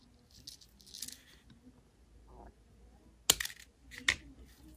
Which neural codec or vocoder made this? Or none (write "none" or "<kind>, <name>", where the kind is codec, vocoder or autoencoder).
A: none